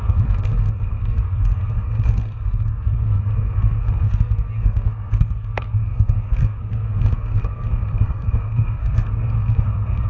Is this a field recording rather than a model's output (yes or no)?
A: no